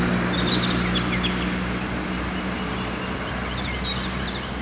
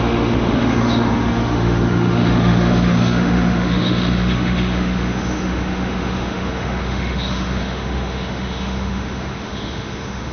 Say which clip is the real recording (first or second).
first